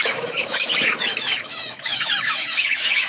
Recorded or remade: remade